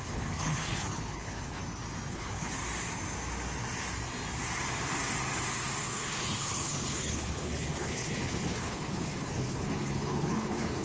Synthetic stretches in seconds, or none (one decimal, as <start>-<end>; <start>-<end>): 0.0-1.6; 2.1-2.6; 5.8-10.8